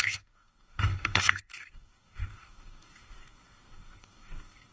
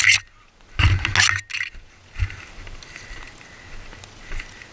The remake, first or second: first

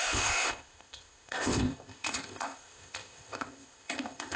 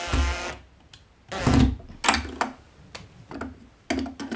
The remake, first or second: first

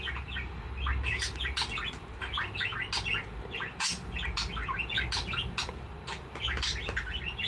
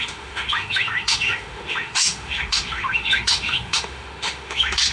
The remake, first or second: second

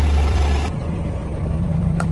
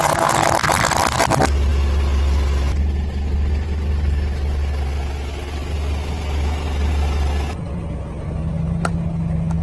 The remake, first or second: first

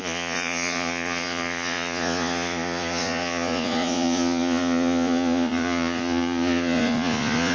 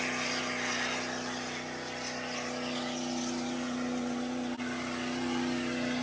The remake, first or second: first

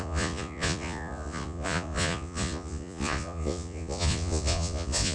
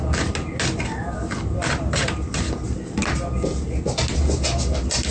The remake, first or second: first